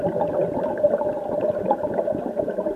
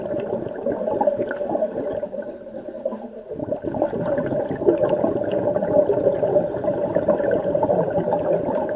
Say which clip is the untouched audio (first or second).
second